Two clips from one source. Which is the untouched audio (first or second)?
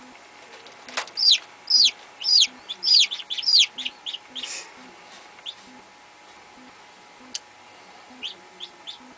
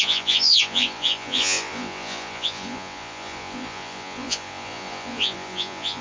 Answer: first